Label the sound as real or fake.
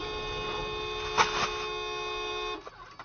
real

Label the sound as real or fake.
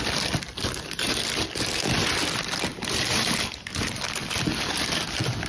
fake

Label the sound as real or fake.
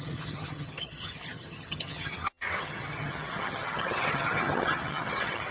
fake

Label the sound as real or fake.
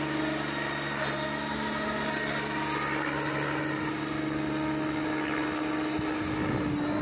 real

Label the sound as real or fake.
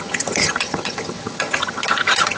fake